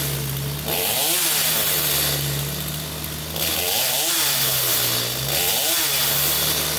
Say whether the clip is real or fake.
real